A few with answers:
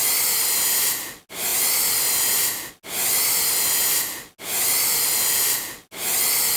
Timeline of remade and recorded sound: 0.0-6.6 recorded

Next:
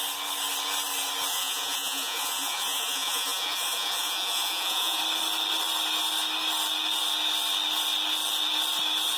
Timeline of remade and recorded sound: 0.0-1.3 recorded; 1.3-5.0 remade; 5.0-9.2 recorded

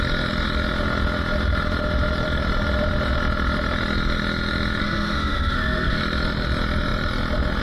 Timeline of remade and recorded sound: 0.0-4.8 recorded; 4.8-6.0 remade; 6.0-7.6 recorded

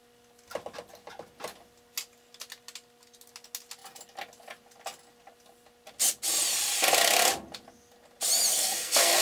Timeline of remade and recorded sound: 0.0-8.5 recorded; 8.5-9.2 remade

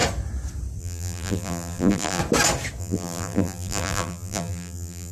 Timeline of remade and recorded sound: 0.0-0.8 recorded; 0.8-2.2 remade; 2.2-2.8 recorded; 2.8-5.1 remade

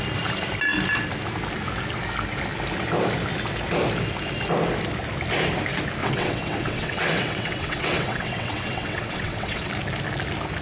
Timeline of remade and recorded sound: 0.0-6.0 recorded; 6.0-9.7 remade; 9.7-10.6 recorded